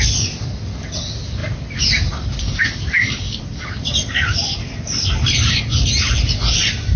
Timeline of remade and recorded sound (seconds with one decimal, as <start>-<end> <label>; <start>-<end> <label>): 0.0-1.4 recorded; 1.4-5.6 remade; 5.6-7.0 recorded